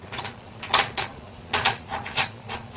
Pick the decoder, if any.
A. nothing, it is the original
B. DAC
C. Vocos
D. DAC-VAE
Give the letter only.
C